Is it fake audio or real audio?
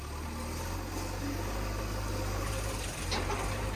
real